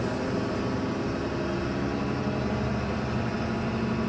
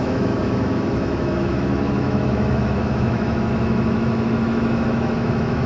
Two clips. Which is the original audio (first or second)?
first